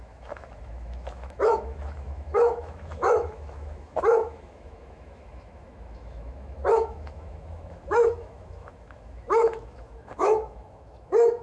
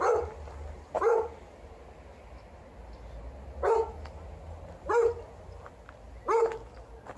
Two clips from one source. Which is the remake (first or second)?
first